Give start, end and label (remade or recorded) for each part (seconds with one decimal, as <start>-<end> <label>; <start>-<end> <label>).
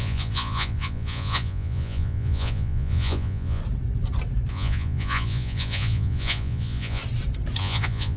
0.0-3.6 remade; 3.6-4.5 recorded; 4.5-7.0 remade; 7.0-7.6 recorded; 7.6-8.2 remade